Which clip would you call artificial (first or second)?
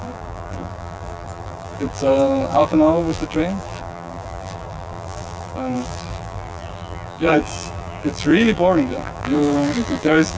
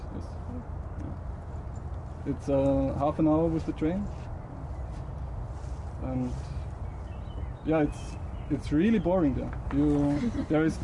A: first